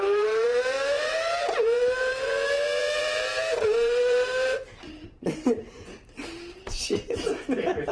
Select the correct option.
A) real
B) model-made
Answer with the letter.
B